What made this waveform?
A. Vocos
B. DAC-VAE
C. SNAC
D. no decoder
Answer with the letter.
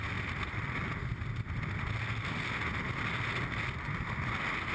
D